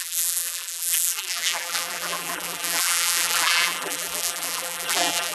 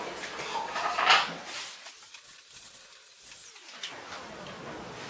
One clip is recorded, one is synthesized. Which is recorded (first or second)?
second